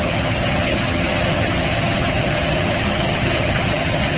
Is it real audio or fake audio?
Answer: fake